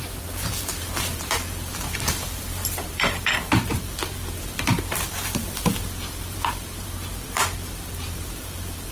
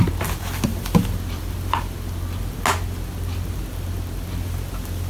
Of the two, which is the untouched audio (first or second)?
second